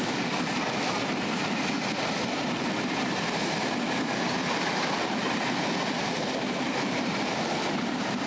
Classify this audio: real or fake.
fake